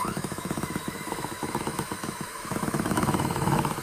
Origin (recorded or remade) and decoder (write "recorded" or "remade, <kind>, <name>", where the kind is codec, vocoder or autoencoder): remade, autoencoder, DAC-VAE